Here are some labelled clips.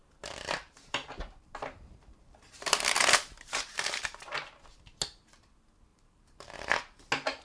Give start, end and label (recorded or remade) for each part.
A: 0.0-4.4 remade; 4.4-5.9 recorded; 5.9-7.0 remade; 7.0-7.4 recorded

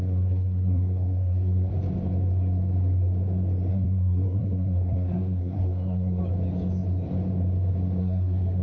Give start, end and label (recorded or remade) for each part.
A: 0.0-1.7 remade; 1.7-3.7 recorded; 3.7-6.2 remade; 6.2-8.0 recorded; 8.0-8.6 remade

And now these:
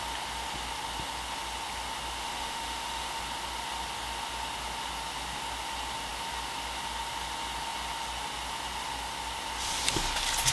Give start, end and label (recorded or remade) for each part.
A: 0.0-2.2 recorded; 2.2-3.2 remade; 3.2-10.5 recorded

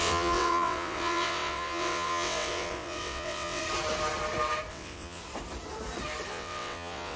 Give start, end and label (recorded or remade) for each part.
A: 0.0-3.6 remade; 3.6-4.7 recorded; 4.7-5.2 remade; 5.2-6.3 recorded; 6.3-7.2 remade

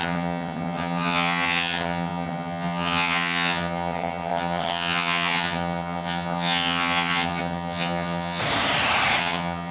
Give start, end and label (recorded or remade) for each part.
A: 0.0-8.4 remade; 8.4-9.2 recorded; 9.2-9.7 remade